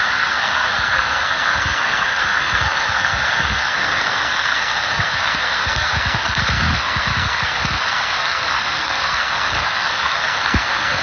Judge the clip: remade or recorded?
remade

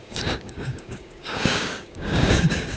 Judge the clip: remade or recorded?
remade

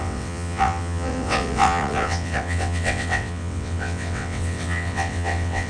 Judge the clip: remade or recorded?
remade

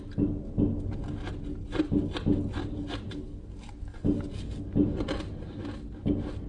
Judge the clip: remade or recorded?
recorded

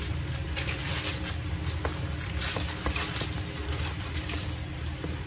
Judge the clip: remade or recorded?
recorded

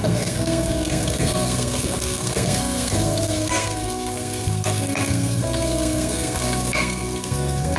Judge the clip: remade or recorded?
remade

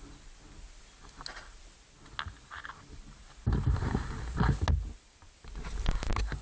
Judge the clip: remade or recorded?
recorded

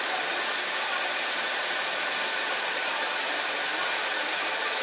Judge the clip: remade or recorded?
recorded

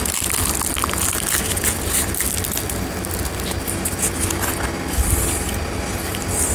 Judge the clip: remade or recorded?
recorded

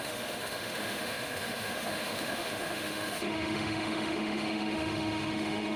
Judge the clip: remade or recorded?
remade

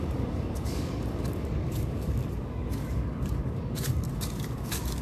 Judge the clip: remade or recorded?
remade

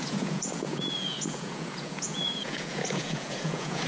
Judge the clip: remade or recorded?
remade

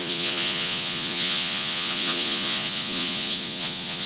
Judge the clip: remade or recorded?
remade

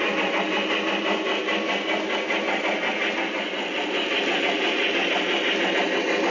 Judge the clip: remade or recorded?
recorded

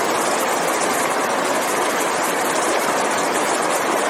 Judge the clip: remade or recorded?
recorded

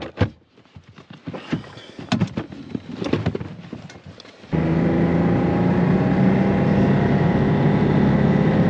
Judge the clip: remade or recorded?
recorded